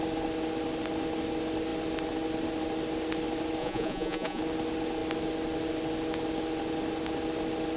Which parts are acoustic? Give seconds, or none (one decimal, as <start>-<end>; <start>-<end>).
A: 0.0-3.6; 4.4-7.8